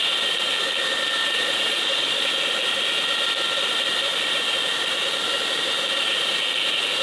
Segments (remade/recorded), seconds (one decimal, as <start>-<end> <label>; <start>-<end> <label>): 0.0-1.2 recorded; 1.2-2.3 remade; 2.3-7.0 recorded